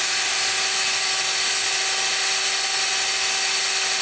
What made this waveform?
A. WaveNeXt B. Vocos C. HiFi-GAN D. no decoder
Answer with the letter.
D